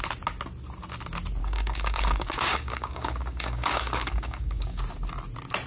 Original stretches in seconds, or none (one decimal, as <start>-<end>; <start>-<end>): 0.0-1.4; 4.8-5.7